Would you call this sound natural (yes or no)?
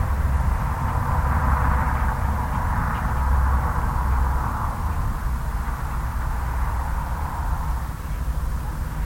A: yes